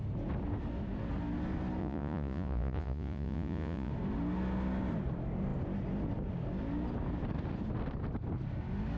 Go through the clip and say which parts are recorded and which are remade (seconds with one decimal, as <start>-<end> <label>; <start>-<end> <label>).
0.0-1.8 recorded; 1.8-3.9 remade; 3.9-9.0 recorded